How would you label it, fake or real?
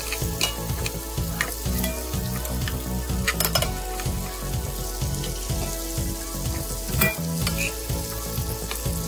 real